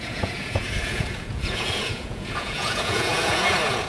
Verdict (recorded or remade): remade